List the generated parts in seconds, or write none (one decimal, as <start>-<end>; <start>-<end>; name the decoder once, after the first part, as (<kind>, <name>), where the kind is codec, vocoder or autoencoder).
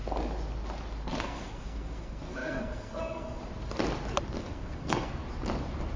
1.2-3.4 (codec, SNAC); 4.4-5.2